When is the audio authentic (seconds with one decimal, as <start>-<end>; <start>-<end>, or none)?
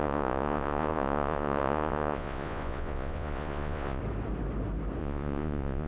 4.0-5.0